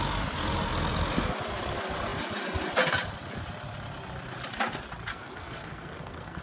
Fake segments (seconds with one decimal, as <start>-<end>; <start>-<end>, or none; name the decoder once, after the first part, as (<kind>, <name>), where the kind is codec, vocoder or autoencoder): 5.1-6.4 (codec, SNAC)